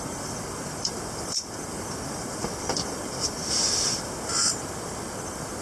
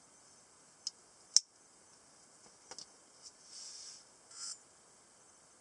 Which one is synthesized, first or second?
first